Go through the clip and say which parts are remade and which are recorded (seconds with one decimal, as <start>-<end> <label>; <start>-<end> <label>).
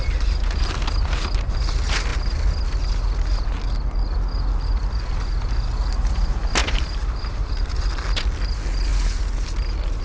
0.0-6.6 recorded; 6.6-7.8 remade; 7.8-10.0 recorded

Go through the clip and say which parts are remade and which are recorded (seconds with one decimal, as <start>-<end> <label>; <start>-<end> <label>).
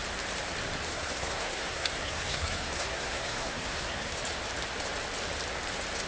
0.0-0.9 recorded; 0.9-4.2 remade; 4.2-6.1 recorded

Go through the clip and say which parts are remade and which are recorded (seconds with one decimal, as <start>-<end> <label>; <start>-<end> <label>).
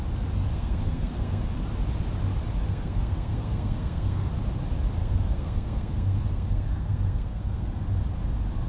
0.0-0.5 recorded; 0.5-1.4 remade; 1.4-2.6 recorded; 2.6-4.3 remade; 4.3-5.0 recorded; 5.0-7.7 remade; 7.7-8.7 recorded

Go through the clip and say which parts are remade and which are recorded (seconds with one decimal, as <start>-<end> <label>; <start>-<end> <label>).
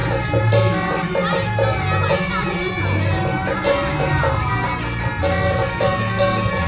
0.0-6.7 recorded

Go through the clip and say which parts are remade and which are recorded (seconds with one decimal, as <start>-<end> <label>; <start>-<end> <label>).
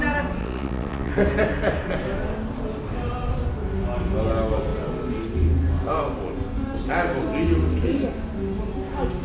0.0-0.4 recorded; 0.4-1.1 remade; 1.1-9.2 recorded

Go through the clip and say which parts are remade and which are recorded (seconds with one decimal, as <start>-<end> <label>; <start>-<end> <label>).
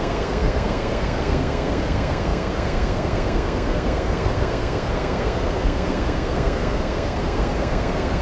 0.0-8.2 remade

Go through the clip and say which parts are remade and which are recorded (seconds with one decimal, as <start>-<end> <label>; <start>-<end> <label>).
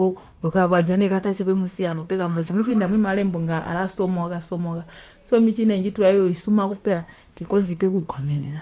0.0-2.7 remade; 2.7-6.7 recorded; 6.7-8.6 remade